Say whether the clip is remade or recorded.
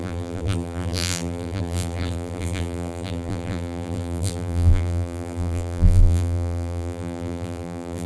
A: remade